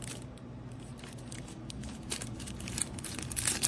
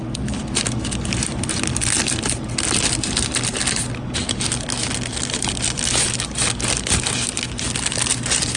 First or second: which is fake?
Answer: first